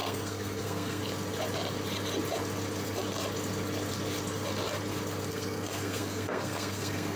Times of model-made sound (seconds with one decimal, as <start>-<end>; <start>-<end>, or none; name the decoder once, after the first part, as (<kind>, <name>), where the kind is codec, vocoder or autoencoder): 0.0-1.0 (codec, SNAC); 5.3-7.2